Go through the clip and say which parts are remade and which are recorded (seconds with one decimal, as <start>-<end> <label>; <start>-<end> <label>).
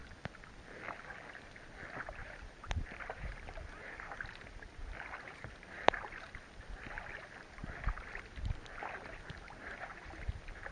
0.0-2.2 recorded; 2.2-6.7 remade; 6.7-10.7 recorded